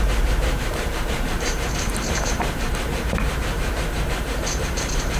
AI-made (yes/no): yes